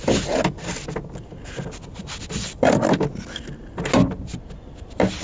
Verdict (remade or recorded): recorded